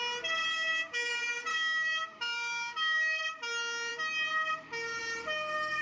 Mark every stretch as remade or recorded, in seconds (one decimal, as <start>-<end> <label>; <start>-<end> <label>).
0.0-0.5 recorded; 0.5-1.1 remade; 1.1-1.5 recorded; 1.5-3.2 remade; 3.2-5.8 recorded